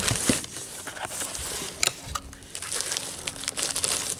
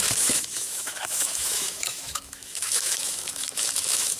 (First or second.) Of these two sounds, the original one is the first